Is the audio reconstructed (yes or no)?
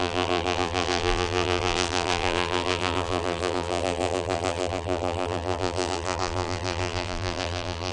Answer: yes